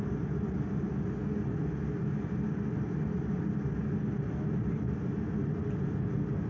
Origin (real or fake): real